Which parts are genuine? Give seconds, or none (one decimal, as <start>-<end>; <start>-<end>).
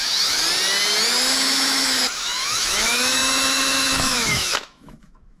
0.4-1.3